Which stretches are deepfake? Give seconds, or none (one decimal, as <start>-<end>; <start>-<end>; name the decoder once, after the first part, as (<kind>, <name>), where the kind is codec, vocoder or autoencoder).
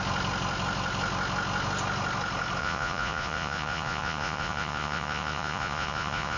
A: 2.6-6.4 (vocoder, Vocos)